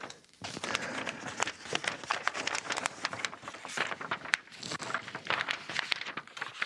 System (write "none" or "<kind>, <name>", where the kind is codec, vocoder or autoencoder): none